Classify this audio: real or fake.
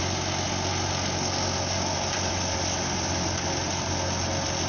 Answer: real